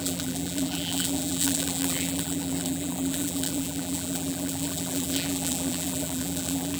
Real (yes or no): no